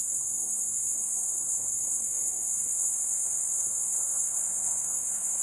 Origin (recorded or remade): remade